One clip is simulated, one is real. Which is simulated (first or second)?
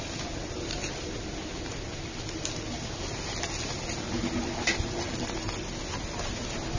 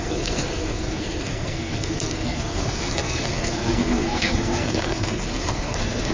second